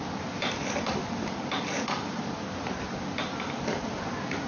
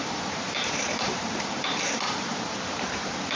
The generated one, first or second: second